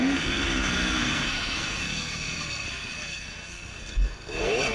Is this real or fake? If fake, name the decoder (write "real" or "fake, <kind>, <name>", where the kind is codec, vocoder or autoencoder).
fake, codec, SNAC